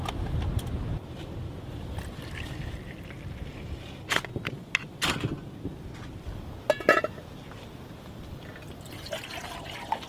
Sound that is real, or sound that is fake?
real